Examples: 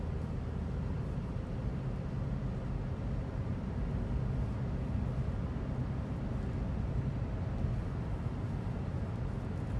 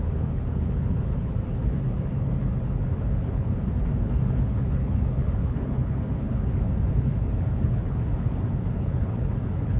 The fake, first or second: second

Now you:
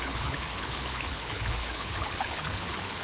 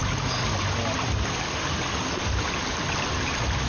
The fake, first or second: first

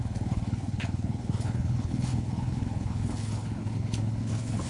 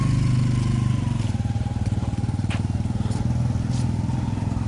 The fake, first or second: first